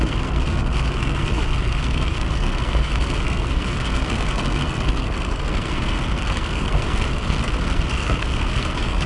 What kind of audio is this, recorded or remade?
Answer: remade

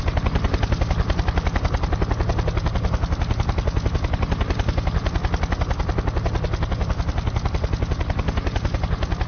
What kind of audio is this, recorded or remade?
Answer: recorded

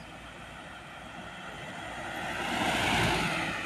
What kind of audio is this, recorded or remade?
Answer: recorded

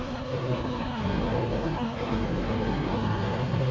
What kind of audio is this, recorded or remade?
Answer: remade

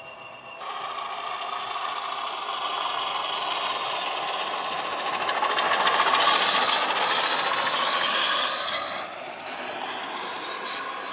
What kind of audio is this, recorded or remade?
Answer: recorded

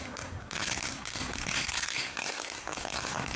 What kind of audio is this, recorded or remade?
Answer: remade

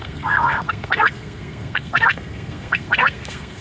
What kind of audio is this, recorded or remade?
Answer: remade